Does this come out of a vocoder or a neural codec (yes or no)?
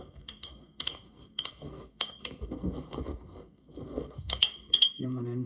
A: yes